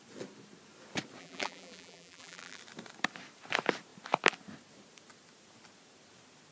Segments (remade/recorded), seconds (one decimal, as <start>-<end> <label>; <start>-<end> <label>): 0.0-1.2 recorded; 1.2-2.6 remade; 2.6-6.5 recorded